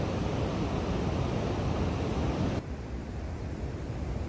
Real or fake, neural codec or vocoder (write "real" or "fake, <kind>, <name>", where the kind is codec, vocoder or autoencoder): real